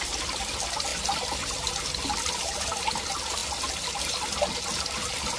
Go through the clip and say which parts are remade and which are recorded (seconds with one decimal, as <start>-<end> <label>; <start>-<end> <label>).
0.0-5.4 recorded